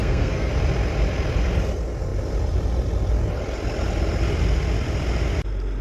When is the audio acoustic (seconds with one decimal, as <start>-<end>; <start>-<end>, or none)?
0.5-5.8